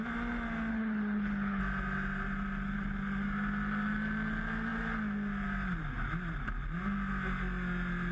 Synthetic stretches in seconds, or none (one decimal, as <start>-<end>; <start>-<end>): 0.7-1.6